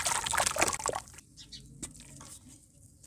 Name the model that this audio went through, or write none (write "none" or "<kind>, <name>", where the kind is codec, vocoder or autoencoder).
none